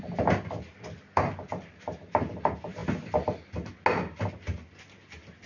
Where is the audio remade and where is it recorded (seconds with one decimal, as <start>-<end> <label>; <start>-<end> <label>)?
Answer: 0.0-5.5 recorded